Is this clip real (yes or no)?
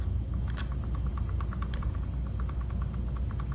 yes